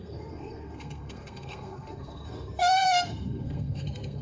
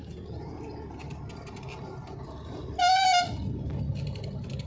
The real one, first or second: second